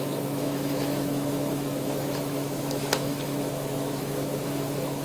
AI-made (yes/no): yes